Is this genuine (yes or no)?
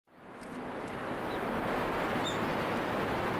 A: no